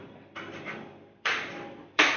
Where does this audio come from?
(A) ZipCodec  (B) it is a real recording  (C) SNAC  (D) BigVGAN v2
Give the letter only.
D